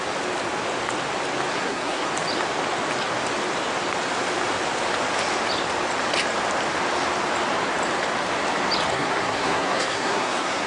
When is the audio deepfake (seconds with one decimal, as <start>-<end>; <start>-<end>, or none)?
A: 1.5-2.1; 8.9-10.7

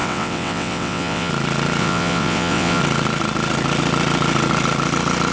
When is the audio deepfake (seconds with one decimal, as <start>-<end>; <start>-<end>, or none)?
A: 0.0-1.3; 1.8-2.8

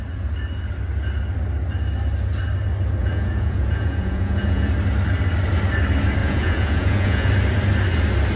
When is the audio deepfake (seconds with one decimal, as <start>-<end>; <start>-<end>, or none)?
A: 3.0-4.7; 6.2-7.3

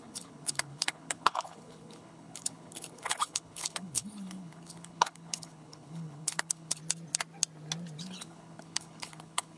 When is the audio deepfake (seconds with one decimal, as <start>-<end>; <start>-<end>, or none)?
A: 0.0-6.8; 8.0-9.6

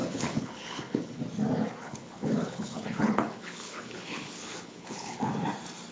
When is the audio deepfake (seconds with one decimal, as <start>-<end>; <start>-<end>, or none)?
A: 0.0-1.2; 1.8-5.3

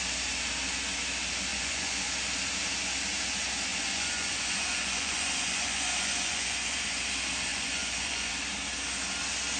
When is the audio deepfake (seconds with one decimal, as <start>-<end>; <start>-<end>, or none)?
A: 1.5-2.1; 3.7-7.0; 7.5-8.3